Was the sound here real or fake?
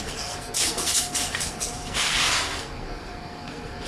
fake